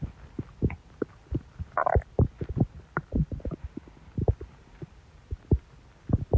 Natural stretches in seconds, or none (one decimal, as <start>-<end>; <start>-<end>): 0.0-6.4